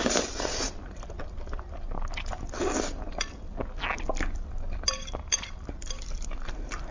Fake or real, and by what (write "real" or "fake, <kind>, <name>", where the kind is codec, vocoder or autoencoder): real